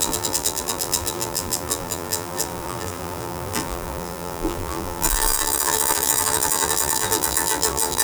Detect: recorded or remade remade